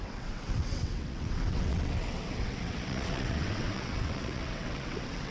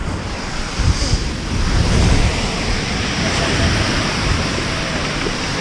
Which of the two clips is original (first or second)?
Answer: second